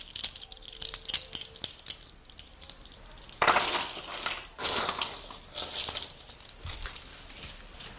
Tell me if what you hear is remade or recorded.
recorded